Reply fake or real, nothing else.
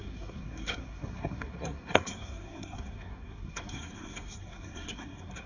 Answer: fake